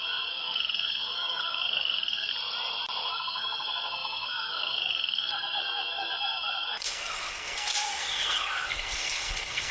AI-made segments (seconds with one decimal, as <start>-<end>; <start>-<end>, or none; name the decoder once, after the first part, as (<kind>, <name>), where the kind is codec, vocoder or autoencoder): 0.0-2.3 (codec, SNAC); 3.1-9.7